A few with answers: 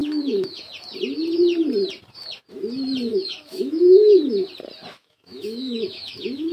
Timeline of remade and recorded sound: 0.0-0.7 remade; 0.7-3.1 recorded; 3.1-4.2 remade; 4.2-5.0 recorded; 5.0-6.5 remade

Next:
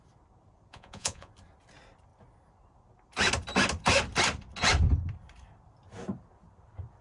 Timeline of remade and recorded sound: 0.0-0.7 recorded; 0.7-1.3 remade; 1.3-7.0 recorded